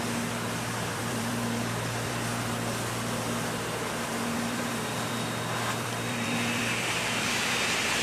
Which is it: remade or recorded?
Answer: remade